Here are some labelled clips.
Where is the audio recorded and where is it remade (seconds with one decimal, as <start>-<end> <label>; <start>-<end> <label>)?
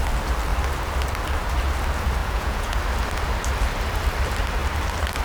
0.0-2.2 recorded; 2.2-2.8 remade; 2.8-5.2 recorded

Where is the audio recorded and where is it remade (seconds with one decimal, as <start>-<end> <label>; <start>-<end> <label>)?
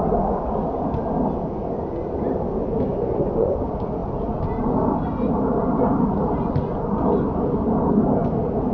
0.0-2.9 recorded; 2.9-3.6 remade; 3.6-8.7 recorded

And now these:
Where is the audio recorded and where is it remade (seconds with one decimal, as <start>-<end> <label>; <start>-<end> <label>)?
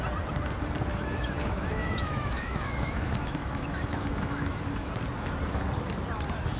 0.0-0.9 recorded; 0.9-4.9 remade; 4.9-6.6 recorded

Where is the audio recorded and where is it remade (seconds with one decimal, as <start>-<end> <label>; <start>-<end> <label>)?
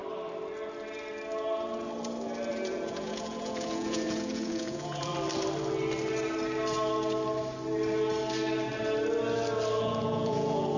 0.0-2.5 recorded; 2.5-5.1 remade; 5.1-9.8 recorded; 9.8-10.8 remade